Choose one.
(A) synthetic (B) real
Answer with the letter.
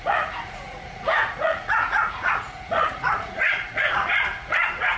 A